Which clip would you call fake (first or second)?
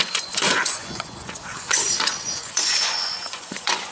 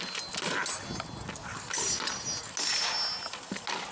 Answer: first